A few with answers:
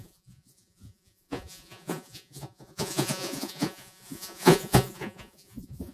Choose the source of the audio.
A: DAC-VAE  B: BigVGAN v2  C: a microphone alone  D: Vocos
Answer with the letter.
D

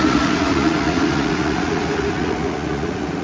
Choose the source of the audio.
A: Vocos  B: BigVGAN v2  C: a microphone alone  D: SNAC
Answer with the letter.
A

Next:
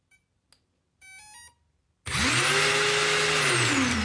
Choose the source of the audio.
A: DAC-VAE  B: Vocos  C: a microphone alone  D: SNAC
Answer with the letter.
C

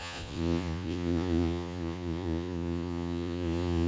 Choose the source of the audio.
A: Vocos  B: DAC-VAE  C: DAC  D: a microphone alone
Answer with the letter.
A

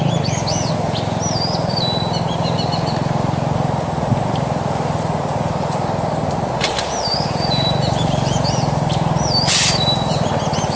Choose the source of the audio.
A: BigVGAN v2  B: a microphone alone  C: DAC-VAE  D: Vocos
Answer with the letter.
B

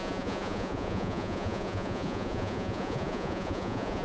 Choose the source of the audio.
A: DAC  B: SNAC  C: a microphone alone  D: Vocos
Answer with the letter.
D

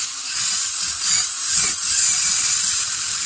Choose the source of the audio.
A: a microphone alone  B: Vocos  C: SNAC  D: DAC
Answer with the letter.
A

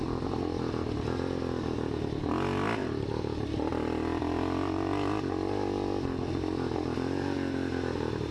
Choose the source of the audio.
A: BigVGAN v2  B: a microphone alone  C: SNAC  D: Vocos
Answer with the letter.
B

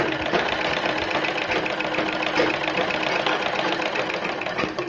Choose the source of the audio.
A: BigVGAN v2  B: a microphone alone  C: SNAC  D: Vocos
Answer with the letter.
B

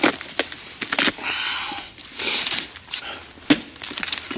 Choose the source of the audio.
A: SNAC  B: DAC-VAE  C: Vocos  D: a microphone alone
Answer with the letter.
D